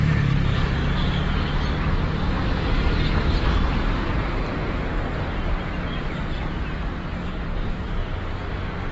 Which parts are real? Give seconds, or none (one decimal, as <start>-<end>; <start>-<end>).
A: 0.8-3.1; 8.0-8.9

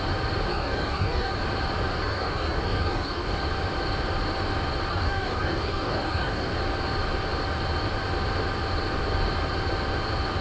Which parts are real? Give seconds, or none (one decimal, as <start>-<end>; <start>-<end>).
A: 0.0-0.5; 1.4-1.9; 3.4-4.9; 6.6-10.4

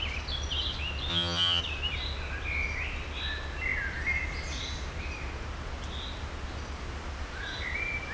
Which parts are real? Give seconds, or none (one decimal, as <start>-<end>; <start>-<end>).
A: 0.0-1.1; 1.6-8.1

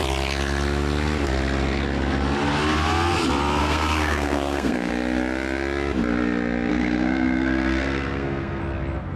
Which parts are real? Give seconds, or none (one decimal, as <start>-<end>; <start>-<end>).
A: 0.0-3.6; 4.9-6.7; 8.6-9.2

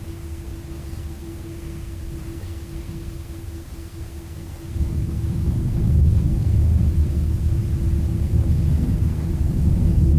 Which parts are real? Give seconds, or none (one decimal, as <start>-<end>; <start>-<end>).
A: 7.6-8.1

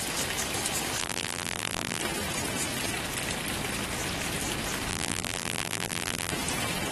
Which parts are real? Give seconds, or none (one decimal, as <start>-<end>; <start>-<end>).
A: 0.0-1.0; 2.0-4.9; 6.3-6.9

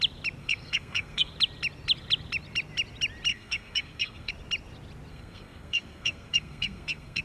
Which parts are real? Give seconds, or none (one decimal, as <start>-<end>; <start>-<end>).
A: 0.0-0.4; 1.3-3.3; 4.3-5.1